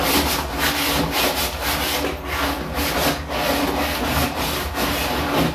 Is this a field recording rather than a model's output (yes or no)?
yes